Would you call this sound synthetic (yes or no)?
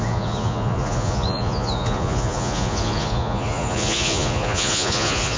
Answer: yes